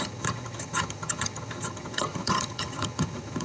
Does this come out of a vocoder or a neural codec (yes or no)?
yes